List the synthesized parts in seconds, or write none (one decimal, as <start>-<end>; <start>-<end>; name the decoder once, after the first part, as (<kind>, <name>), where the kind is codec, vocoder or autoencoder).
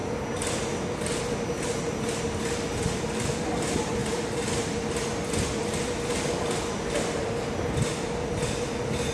none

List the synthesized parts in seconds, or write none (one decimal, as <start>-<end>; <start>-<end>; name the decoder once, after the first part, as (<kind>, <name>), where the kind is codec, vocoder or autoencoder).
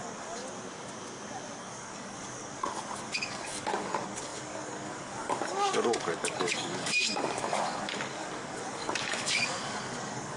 0.0-0.4 (codec, DAC); 1.6-10.4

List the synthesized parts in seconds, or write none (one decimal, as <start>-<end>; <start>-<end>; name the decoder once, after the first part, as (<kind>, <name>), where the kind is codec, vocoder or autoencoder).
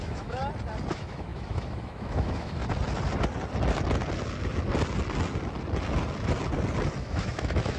0.0-0.4 (autoencoder, DAC-VAE); 0.9-2.6; 7.0-7.8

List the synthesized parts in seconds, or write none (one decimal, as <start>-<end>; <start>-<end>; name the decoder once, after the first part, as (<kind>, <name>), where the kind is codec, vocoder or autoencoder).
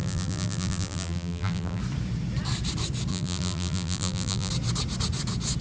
0.0-1.8 (vocoder, BigVGAN v2); 3.1-4.5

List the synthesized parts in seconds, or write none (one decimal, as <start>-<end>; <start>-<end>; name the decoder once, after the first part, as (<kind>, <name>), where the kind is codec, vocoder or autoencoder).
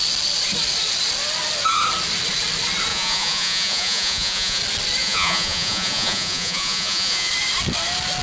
2.9-4.6 (vocoder, Vocos); 5.0-7.3